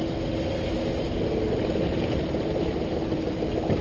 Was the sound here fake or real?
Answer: real